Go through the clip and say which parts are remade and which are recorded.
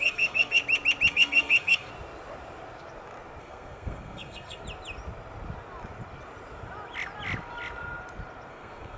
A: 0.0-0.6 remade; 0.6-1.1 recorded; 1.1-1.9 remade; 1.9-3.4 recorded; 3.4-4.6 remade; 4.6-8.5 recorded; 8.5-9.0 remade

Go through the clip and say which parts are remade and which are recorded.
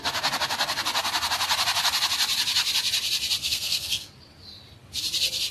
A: 0.0-3.4 recorded; 3.4-4.1 remade; 4.1-5.5 recorded